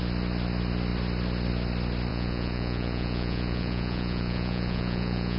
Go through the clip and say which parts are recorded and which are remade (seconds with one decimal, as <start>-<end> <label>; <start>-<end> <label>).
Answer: 0.0-2.1 recorded; 2.1-5.4 remade